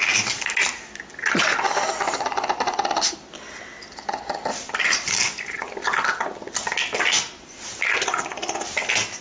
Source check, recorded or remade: recorded